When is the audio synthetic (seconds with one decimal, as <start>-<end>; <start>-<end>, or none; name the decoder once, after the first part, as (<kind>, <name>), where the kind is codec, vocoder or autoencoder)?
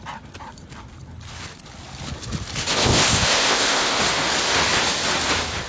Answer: 2.7-4.0 (codec, ZipCodec)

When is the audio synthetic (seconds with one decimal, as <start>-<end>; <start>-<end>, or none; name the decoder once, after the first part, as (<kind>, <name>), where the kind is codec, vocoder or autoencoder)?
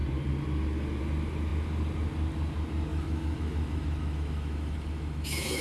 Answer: 2.9-5.6 (autoencoder, DAC-VAE)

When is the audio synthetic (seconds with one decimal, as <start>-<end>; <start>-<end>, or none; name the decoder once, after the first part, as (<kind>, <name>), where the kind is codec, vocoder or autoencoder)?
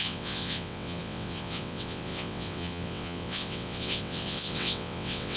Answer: 0.0-5.4 (vocoder, WaveNeXt)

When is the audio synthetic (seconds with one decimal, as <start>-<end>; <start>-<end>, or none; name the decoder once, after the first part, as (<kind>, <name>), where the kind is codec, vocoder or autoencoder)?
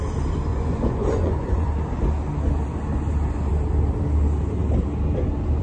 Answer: 0.5-1.7 (vocoder, Vocos)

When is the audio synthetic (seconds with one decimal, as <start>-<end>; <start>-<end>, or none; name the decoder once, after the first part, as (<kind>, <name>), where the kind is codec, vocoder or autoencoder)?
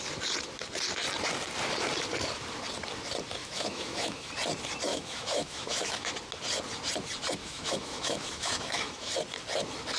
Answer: 3.4-4.3 (autoencoder, DAC-VAE); 4.9-6.1; 7.4-9.1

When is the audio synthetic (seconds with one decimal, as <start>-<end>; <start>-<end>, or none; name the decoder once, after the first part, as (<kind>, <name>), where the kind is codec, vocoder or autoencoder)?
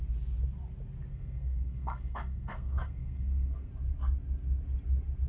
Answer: 1.1-3.7 (codec, SNAC)